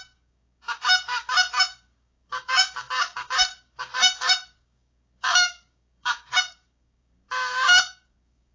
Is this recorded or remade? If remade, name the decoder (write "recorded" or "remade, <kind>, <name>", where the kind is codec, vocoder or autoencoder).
remade, codec, DAC